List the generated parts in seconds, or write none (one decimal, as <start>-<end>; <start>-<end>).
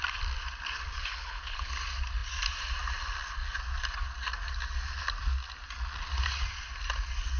1.0-1.7